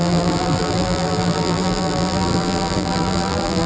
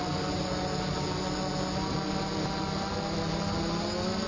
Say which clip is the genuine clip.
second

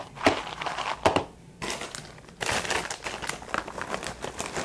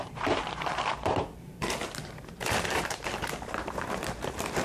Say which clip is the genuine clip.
first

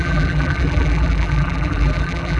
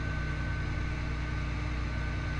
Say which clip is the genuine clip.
second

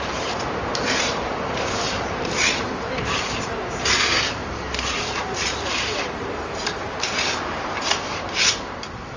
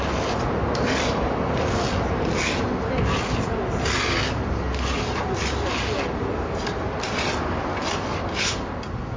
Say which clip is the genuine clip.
second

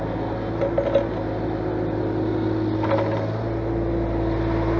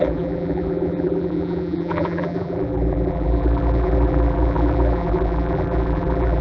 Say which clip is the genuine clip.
first